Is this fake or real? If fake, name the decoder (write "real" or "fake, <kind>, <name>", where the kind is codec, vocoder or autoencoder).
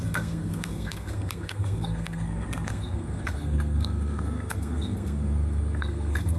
fake, codec, SNAC